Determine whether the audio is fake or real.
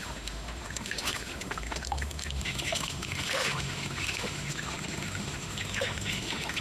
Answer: fake